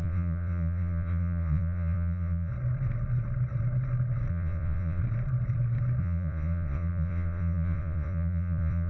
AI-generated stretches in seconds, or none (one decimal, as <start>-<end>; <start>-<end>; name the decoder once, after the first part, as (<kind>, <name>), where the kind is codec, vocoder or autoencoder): 0.0-2.5 (vocoder, Vocos); 4.3-5.0; 6.0-8.9